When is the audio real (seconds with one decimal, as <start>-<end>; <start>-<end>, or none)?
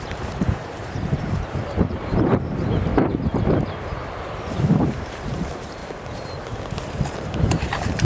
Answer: 2.9-4.3; 5.8-7.1